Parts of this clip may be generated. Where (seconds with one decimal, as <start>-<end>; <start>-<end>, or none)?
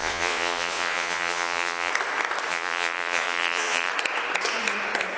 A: 0.0-1.9; 2.5-3.9